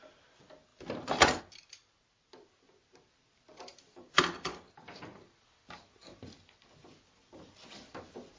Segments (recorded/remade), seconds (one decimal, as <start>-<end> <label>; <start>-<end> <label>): 0.0-8.4 recorded